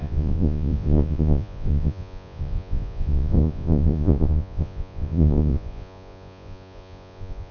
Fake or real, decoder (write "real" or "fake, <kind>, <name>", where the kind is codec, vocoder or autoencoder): fake, vocoder, Vocos